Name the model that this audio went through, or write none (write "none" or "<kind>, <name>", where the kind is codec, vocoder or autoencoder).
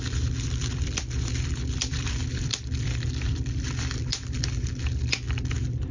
none